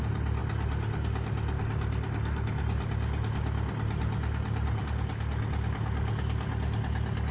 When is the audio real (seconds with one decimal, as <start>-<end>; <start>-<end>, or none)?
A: 0.0-7.3